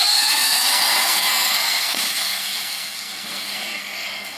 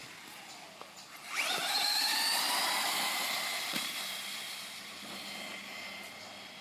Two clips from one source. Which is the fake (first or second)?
first